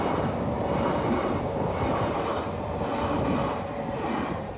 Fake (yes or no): no